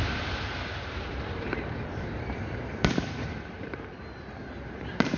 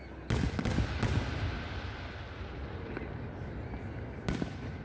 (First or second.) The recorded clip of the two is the second